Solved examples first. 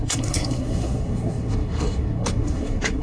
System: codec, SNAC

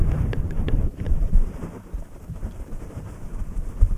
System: vocoder, BigVGAN v2